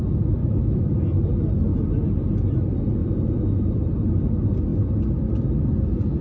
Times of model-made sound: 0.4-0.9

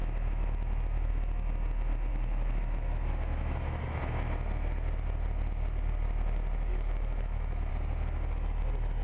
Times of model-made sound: 0.0-1.1; 2.1-4.0; 6.7-7.7

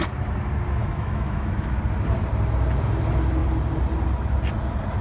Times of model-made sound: 0.8-1.8

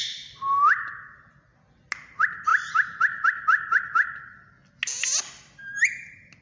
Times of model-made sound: none

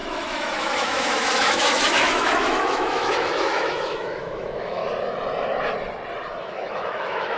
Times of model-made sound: 0.0-4.8; 6.4-7.4

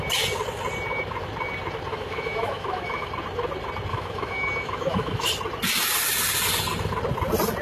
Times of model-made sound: 1.9-3.1; 3.9-5.3

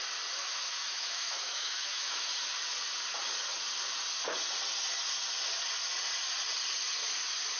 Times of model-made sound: 0.4-2.3